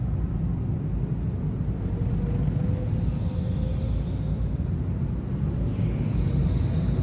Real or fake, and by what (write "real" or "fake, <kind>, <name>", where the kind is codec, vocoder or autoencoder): real